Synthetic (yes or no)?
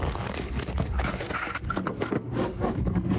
yes